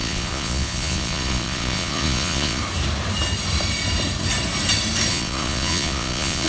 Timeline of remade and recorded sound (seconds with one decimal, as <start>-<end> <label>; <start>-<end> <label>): 0.0-2.6 remade; 2.6-5.1 recorded; 5.1-6.5 remade

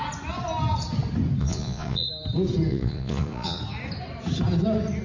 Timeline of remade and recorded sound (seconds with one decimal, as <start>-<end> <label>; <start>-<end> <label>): 0.0-1.4 recorded; 1.4-2.1 remade; 2.1-2.7 recorded; 2.7-3.6 remade; 3.6-5.0 recorded

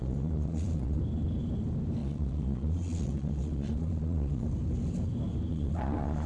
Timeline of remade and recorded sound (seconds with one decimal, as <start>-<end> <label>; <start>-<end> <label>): 0.0-1.0 remade; 1.0-2.0 recorded; 2.0-4.5 remade; 4.5-5.5 recorded; 5.5-6.3 remade

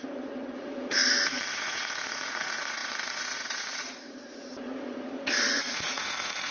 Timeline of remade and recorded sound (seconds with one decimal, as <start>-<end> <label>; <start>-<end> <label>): 0.0-1.0 remade; 1.0-1.5 recorded; 1.5-6.5 remade

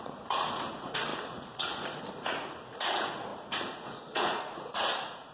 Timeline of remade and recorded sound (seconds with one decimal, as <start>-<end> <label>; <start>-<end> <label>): 0.0-5.3 remade

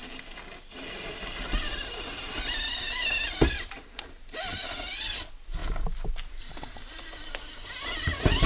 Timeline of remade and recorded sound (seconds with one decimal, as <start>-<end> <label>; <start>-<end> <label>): 0.0-8.5 recorded

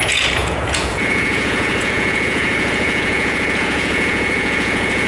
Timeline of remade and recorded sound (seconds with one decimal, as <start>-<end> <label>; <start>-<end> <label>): 0.0-5.1 remade